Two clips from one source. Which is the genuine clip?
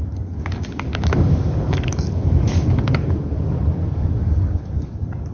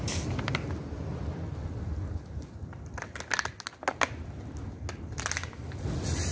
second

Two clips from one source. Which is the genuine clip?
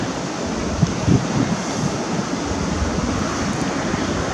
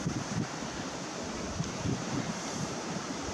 first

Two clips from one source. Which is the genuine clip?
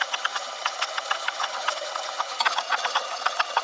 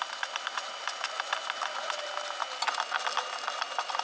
second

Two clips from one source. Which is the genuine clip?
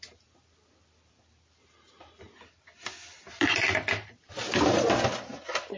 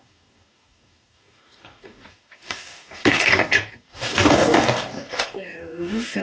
first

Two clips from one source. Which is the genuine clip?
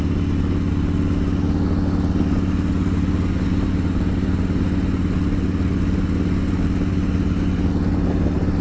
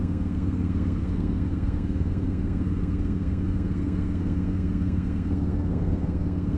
first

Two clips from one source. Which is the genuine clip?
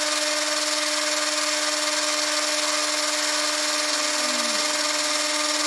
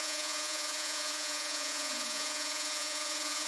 first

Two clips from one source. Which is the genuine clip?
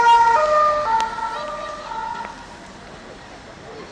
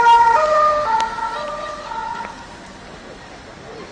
first